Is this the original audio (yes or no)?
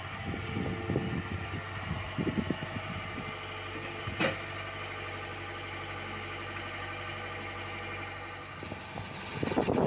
yes